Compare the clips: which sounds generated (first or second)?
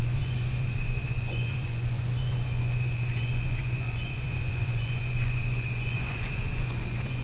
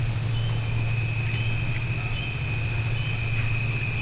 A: first